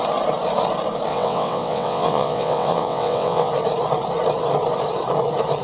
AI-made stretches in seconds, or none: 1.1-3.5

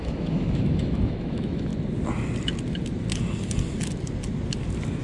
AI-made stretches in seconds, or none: 0.0-1.7

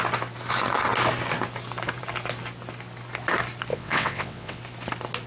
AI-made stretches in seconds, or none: 3.7-4.6

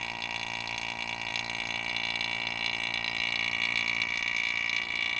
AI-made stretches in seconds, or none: none

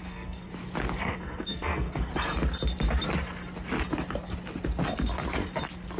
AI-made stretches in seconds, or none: 0.0-0.5; 1.0-2.1

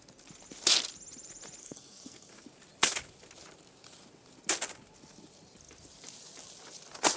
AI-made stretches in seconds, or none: 1.6-2.3